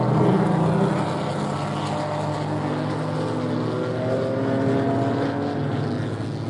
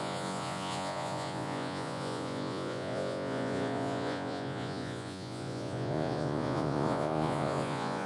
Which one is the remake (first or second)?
second